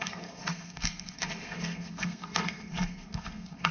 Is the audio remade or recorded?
remade